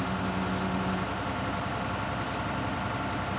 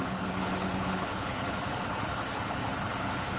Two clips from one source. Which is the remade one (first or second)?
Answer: second